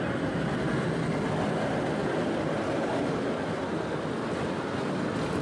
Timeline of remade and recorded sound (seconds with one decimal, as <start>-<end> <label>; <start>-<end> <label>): 0.0-2.0 recorded; 2.0-2.9 remade; 2.9-5.4 recorded